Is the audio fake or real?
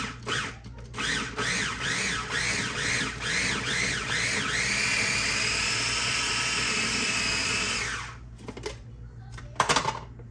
real